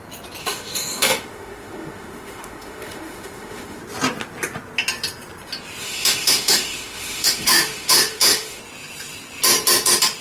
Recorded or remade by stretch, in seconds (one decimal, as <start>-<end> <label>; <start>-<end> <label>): 0.0-0.4 recorded; 0.4-3.8 remade; 3.8-5.8 recorded; 5.8-8.6 remade; 8.6-10.2 recorded